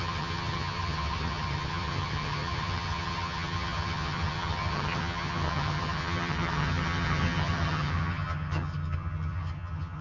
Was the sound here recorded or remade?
remade